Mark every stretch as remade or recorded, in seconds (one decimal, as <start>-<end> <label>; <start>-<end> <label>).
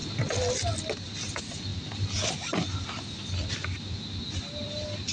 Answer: 0.0-1.7 recorded; 1.7-2.3 remade; 2.3-5.1 recorded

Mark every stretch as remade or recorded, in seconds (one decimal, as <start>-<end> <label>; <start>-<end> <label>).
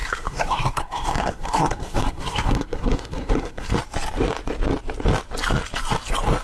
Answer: 0.0-3.7 remade; 3.7-6.4 recorded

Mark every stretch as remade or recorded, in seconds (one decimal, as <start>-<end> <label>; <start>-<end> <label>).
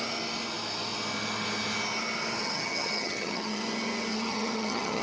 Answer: 0.0-2.4 recorded; 2.4-3.6 remade; 3.6-4.1 recorded; 4.1-5.0 remade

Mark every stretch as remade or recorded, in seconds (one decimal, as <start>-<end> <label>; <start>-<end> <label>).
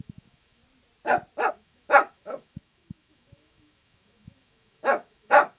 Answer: 0.0-0.6 remade; 0.6-1.5 recorded; 1.5-5.6 remade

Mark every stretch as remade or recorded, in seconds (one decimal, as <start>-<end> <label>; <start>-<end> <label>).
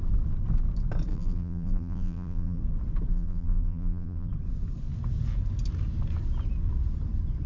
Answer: 0.0-1.1 recorded; 1.1-2.6 remade; 2.6-3.1 recorded; 3.1-4.3 remade; 4.3-7.5 recorded